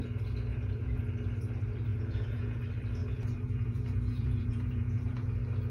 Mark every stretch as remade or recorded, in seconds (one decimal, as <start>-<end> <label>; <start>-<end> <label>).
0.0-0.5 recorded; 0.5-1.0 remade; 1.0-1.9 recorded; 1.9-2.6 remade; 2.6-3.0 recorded; 3.0-5.3 remade; 5.3-5.7 recorded